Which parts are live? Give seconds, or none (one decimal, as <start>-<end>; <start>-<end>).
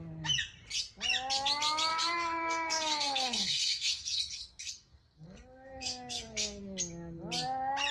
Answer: 0.0-1.9; 6.6-7.9